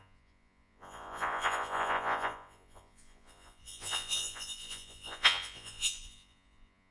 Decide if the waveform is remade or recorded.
remade